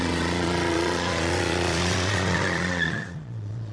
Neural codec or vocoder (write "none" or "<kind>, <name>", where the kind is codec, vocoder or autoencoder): vocoder, Vocos